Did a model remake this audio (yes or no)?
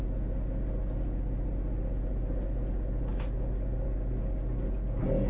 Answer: no